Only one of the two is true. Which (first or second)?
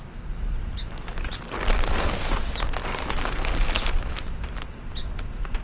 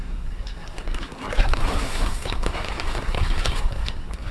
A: first